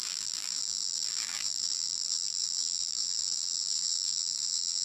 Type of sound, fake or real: fake